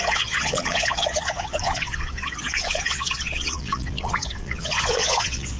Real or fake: fake